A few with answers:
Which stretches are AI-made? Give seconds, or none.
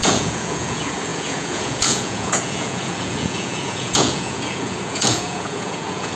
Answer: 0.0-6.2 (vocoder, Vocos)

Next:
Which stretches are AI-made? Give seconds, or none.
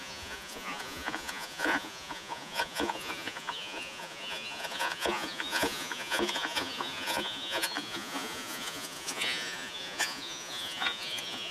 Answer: 0.0-11.5 (vocoder, Vocos)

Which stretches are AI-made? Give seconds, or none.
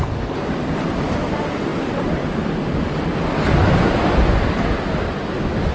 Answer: none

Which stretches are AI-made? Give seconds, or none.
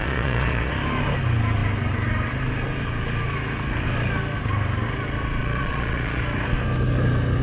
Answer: 0.0-0.7 (vocoder, Vocos); 5.4-6.2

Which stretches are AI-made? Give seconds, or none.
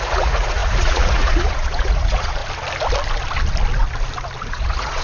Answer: 0.0-2.4 (vocoder, Vocos); 4.5-5.0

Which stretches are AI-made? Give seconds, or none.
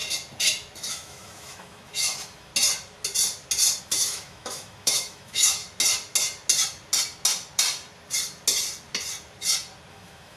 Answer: 0.9-2.5 (autoencoder, DAC-VAE); 3.8-5.6; 9.9-10.4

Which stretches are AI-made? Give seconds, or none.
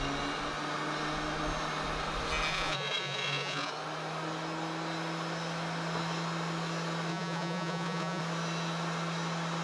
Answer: 2.5-3.7 (vocoder, Vocos); 7.1-8.2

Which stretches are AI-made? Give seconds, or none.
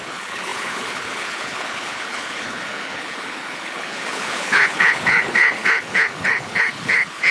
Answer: 0.0-7.3 (codec, HILCodec)